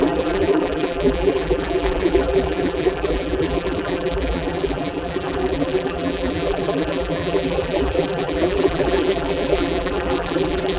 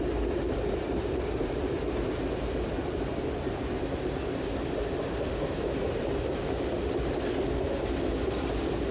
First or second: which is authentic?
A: second